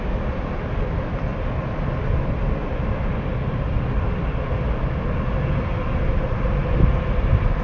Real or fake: real